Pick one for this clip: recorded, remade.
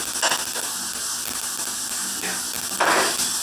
recorded